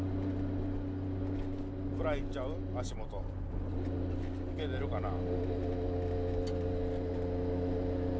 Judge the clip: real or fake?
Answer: real